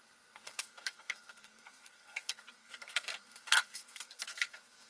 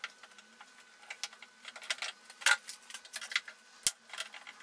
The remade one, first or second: first